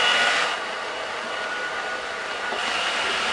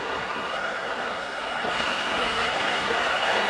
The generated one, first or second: second